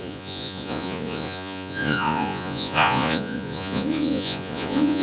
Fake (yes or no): yes